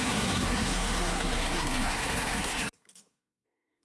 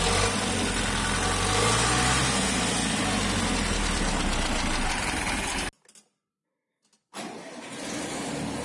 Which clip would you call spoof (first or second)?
first